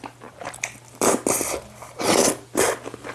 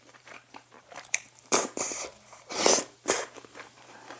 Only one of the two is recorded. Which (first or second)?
first